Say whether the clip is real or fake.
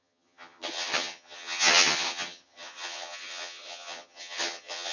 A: fake